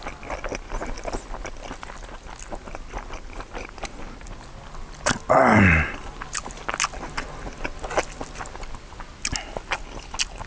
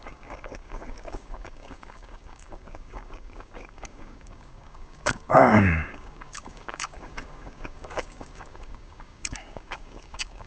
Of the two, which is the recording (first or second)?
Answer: first